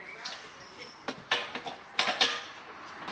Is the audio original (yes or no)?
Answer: yes